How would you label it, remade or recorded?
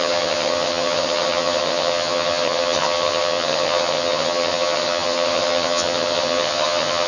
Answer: remade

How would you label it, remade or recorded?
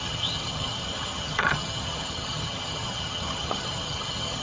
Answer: remade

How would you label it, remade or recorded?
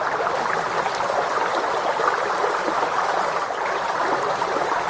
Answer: recorded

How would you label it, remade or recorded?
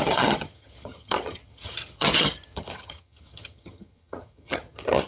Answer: remade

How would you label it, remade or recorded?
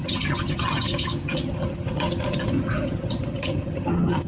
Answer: remade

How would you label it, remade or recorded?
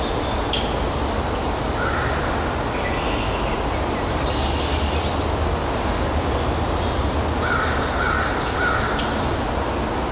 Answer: recorded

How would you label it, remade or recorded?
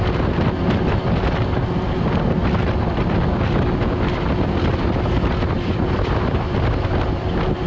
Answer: recorded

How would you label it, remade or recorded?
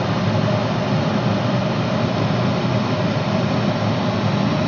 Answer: recorded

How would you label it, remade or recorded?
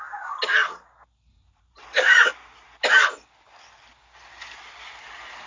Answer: recorded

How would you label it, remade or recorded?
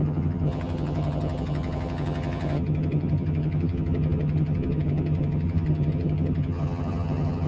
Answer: remade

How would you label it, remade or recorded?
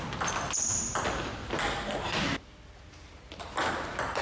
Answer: recorded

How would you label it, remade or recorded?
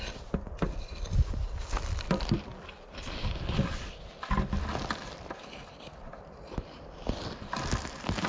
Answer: recorded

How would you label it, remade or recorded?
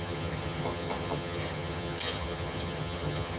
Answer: remade